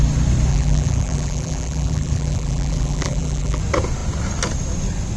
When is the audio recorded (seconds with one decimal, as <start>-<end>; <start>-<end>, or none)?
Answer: 0.0-0.5; 3.6-5.2